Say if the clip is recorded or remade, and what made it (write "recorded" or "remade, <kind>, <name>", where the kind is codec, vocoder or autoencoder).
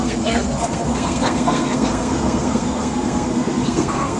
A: remade, codec, SNAC